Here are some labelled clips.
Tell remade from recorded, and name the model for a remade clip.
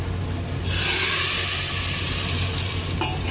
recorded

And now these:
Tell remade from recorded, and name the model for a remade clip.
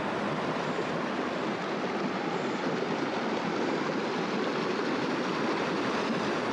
recorded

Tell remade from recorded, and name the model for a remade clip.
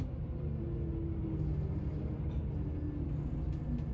recorded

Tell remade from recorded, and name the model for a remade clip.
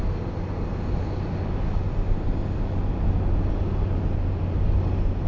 recorded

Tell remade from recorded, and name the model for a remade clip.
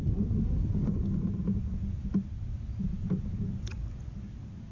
recorded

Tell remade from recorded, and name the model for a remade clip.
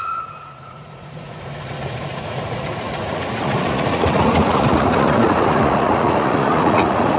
remade, vocoder, Vocos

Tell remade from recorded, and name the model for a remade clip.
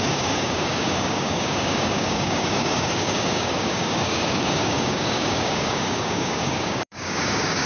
remade, codec, DAC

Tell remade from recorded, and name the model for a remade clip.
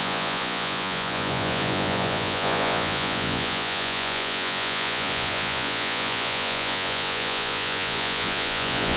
remade, vocoder, Vocos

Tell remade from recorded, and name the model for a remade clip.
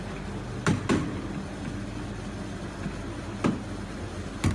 recorded